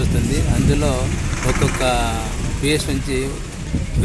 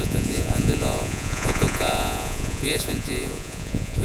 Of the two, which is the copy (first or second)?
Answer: second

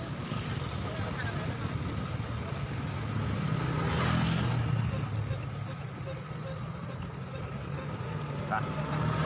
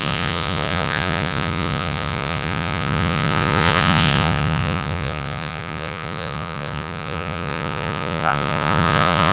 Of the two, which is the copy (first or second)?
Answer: second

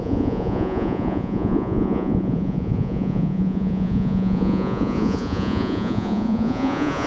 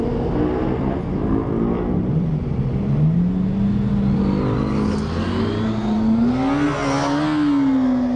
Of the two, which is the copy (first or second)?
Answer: first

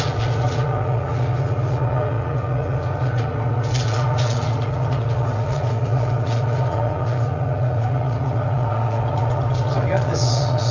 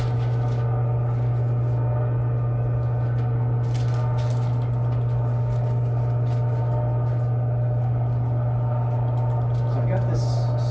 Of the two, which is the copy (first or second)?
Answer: first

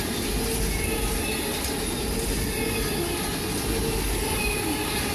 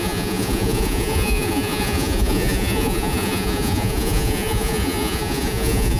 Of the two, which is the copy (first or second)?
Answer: second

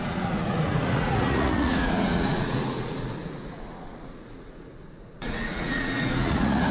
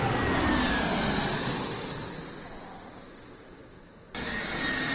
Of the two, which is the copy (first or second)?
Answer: first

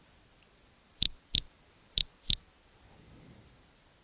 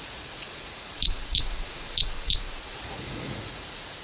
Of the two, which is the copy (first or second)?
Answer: second